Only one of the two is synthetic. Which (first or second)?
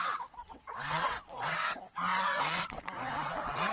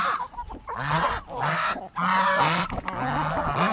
first